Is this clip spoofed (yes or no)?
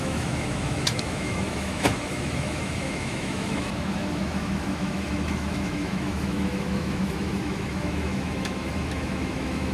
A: yes